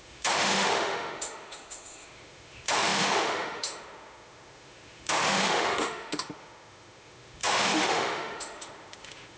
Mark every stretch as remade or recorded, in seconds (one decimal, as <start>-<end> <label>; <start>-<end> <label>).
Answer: 0.0-9.4 remade